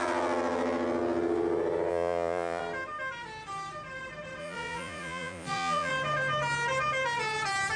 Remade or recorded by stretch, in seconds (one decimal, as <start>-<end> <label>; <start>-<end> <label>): 0.0-1.9 recorded; 1.9-2.6 remade; 2.6-4.4 recorded; 4.4-5.9 remade; 5.9-7.8 recorded

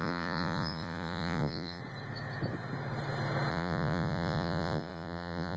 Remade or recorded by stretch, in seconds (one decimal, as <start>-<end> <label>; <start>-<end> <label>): 0.0-1.8 remade; 1.8-3.5 recorded; 3.5-5.6 remade

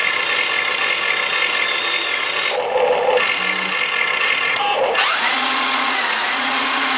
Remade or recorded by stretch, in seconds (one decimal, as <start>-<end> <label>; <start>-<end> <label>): 0.0-4.2 recorded; 4.2-7.0 remade

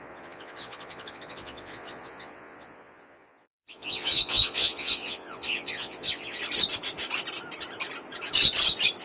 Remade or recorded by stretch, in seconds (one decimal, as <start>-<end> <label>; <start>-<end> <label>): 0.0-6.4 remade; 6.4-9.0 recorded

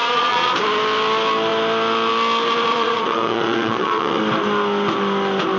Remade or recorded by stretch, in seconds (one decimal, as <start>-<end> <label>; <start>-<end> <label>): 0.0-0.5 remade; 0.5-2.7 recorded; 2.7-4.2 remade; 4.2-5.6 recorded

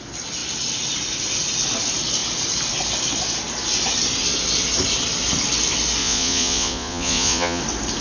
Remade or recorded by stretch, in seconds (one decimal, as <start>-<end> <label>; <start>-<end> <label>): 0.0-6.0 recorded; 6.0-7.6 remade; 7.6-8.0 recorded

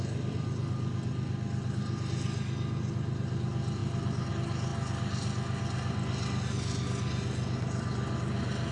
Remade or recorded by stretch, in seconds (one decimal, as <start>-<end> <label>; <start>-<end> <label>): 0.0-8.7 recorded